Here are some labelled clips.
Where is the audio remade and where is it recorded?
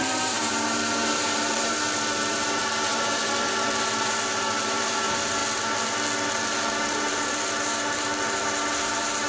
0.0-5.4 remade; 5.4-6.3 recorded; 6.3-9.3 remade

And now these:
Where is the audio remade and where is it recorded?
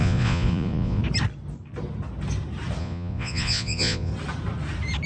0.0-1.0 remade; 1.0-2.8 recorded; 2.8-4.1 remade; 4.1-5.1 recorded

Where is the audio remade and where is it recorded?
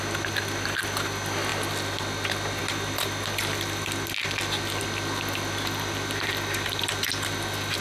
0.0-7.8 recorded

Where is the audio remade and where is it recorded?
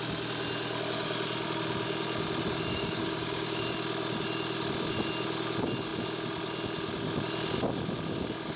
0.0-2.7 recorded; 2.7-3.6 remade; 3.6-8.6 recorded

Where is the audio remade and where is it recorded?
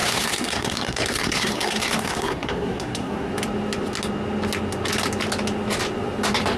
0.0-3.3 remade; 3.3-6.6 recorded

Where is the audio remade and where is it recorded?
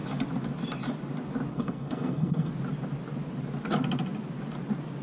0.0-1.5 recorded; 1.5-2.5 remade; 2.5-5.0 recorded